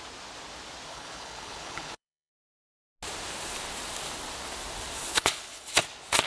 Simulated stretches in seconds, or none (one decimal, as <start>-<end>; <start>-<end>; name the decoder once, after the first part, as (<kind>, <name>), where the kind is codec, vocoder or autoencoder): 0.9-2.3 (codec, HILCodec); 5.1-5.7